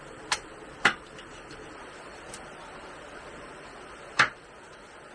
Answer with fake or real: real